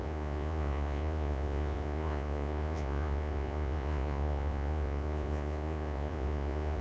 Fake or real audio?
fake